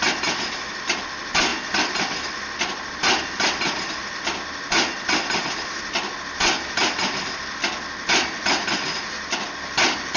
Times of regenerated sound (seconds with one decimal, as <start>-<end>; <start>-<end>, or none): none